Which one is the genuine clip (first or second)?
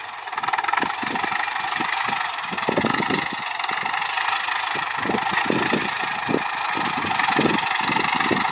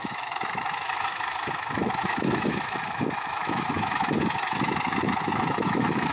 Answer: first